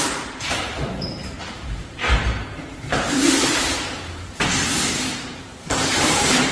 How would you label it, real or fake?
fake